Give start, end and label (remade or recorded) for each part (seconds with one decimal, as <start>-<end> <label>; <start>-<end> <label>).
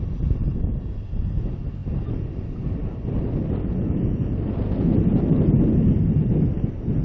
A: 0.0-7.0 recorded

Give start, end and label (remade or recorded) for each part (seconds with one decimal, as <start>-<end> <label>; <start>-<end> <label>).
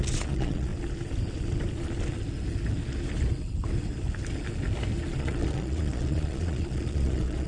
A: 0.0-0.7 remade; 0.7-5.2 recorded; 5.2-7.5 remade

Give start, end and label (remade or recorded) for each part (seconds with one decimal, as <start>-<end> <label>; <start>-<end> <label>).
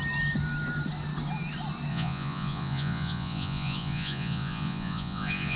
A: 0.0-1.9 recorded; 1.9-5.6 remade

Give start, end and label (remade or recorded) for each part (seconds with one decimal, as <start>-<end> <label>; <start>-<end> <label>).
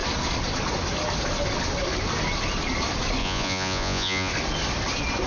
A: 0.0-3.2 recorded; 3.2-4.3 remade; 4.3-5.3 recorded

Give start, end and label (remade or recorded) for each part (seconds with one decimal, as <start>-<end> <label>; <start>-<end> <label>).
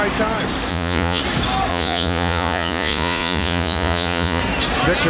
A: 0.0-0.7 recorded; 0.7-1.2 remade; 1.2-1.7 recorded; 1.7-4.4 remade; 4.4-5.1 recorded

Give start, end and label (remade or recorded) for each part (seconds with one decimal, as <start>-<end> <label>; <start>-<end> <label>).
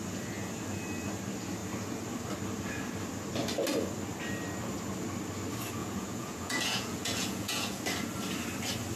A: 0.0-5.8 recorded; 5.8-7.8 remade; 7.8-9.0 recorded